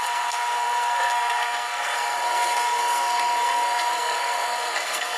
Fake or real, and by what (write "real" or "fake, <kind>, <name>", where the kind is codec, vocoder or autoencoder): fake, codec, SNAC